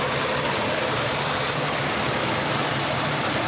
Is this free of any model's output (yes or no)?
no